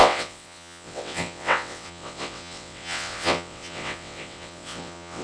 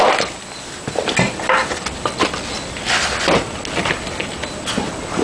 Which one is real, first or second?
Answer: second